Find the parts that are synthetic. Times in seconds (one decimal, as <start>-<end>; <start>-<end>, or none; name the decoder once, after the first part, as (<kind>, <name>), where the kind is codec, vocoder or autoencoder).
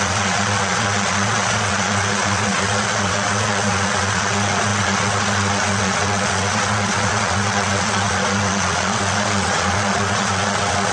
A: 0.0-10.9 (vocoder, Vocos)